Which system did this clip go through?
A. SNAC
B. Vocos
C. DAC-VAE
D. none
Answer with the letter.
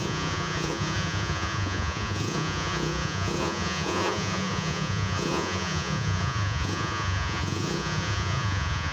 B